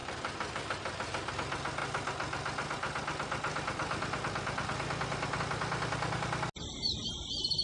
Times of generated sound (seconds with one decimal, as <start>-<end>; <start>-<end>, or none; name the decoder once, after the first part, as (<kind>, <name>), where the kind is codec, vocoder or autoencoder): 0.0-1.3 (vocoder, BigVGAN v2)